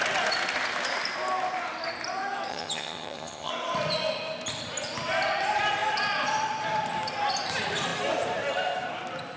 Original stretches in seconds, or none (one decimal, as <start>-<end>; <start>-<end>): 0.0-2.5; 3.5-9.4